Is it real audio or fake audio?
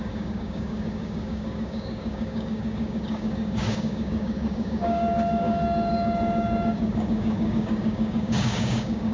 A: fake